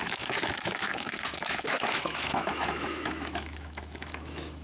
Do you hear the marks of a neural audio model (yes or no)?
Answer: yes